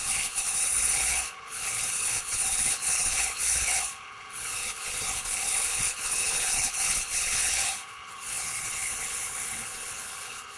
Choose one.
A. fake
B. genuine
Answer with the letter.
A